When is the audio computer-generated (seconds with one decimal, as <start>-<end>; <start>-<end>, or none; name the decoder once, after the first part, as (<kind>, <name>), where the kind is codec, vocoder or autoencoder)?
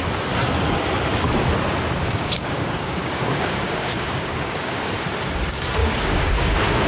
2.0-4.9 (codec, DAC); 5.8-6.9